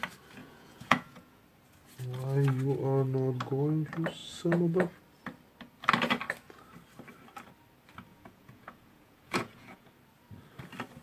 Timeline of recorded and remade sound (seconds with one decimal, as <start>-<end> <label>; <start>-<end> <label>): 0.0-0.4 recorded; 0.4-1.4 remade; 1.4-4.2 recorded; 4.2-5.0 remade; 5.0-8.1 recorded; 8.1-9.9 remade; 9.9-11.0 recorded